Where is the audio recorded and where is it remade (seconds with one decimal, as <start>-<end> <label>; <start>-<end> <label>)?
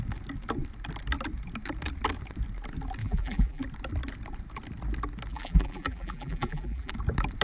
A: 0.0-3.0 recorded; 3.0-3.6 remade; 3.6-5.3 recorded; 5.3-6.9 remade; 6.9-7.4 recorded